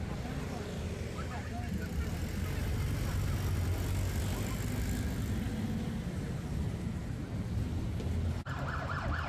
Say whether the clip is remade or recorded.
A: recorded